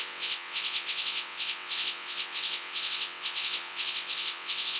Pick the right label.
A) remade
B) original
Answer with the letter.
A